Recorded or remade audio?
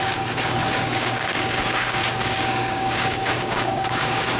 remade